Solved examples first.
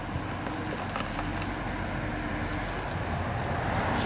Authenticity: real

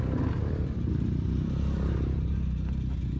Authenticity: real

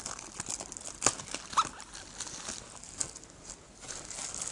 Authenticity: real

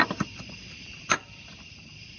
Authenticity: real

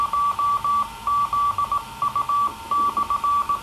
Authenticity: real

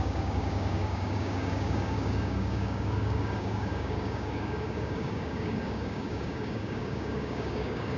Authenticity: fake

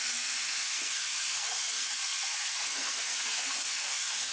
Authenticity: fake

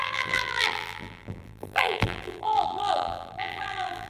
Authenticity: fake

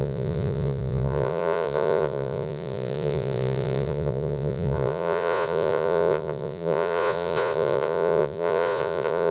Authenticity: fake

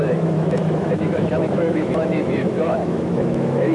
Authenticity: fake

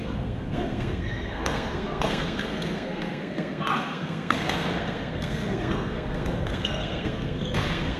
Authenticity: fake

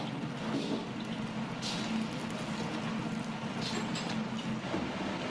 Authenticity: real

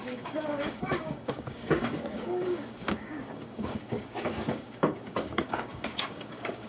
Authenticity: fake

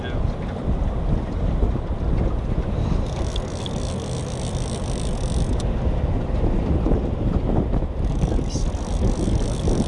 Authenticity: real